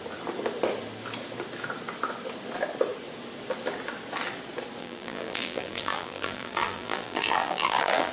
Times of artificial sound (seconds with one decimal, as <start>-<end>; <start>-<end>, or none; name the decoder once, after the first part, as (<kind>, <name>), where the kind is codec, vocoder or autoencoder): 4.8-8.1 (vocoder, BigVGAN v2)